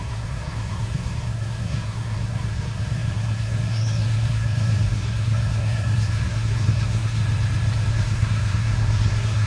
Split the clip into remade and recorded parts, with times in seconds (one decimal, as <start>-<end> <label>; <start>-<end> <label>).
0.0-7.2 remade; 7.2-7.9 recorded; 7.9-9.5 remade